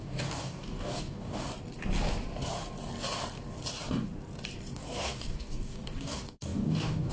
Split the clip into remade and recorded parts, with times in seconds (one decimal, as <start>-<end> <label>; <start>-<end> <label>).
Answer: 0.0-1.5 remade; 1.5-4.7 recorded; 4.7-7.1 remade